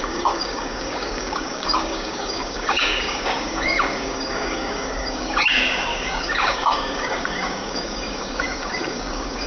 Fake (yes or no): yes